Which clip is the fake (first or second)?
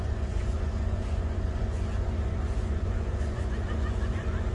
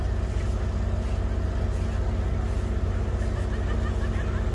first